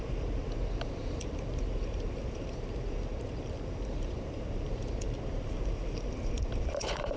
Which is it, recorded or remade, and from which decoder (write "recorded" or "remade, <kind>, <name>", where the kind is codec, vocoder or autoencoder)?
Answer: remade, vocoder, BigVGAN v2